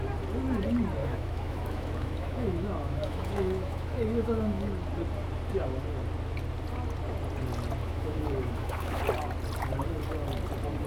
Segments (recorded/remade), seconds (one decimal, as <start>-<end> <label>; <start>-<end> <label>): 0.0-1.0 recorded; 1.0-4.7 remade; 4.7-7.8 recorded; 7.8-9.0 remade; 9.0-10.9 recorded